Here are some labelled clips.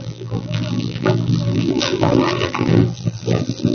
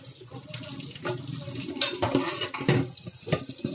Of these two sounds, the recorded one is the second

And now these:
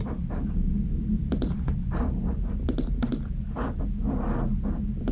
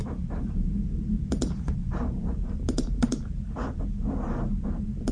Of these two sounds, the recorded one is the first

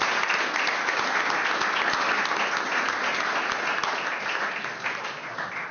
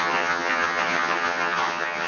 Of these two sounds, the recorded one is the first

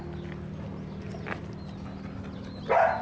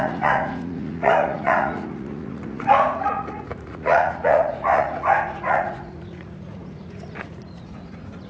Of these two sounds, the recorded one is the first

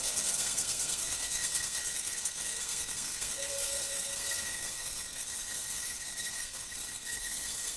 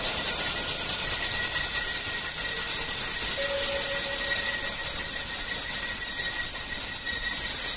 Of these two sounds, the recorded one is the second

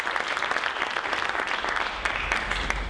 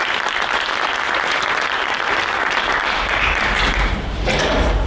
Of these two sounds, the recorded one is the first